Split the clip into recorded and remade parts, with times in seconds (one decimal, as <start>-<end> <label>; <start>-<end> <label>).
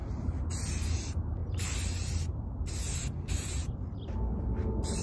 0.0-0.5 remade; 0.5-3.0 recorded; 3.0-3.7 remade; 3.7-5.0 recorded